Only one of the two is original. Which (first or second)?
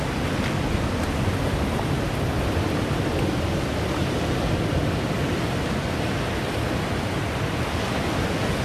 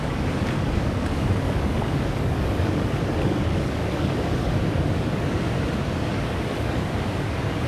first